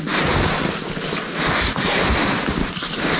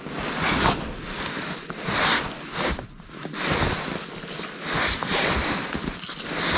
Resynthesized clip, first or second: first